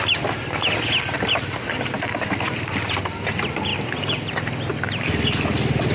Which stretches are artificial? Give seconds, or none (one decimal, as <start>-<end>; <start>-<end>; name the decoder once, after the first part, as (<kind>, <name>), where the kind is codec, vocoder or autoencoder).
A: 0.0-3.7 (vocoder, BigVGAN v2); 4.3-5.9